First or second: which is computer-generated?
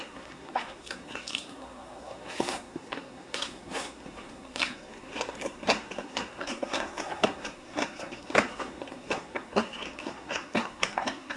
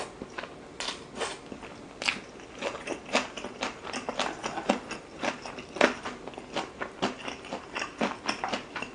first